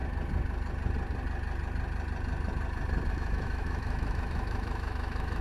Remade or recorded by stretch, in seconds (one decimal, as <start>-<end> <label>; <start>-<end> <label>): 0.0-3.1 recorded; 3.1-5.4 remade